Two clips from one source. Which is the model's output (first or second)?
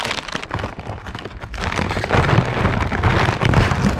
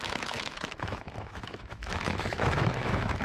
second